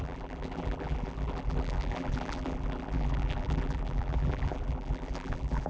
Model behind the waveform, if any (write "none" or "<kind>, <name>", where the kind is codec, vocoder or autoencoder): vocoder, BigVGAN v2